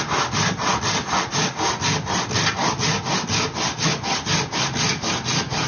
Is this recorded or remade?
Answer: recorded